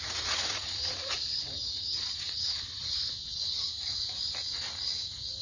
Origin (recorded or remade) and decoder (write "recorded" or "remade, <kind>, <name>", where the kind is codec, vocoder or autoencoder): remade, vocoder, Vocos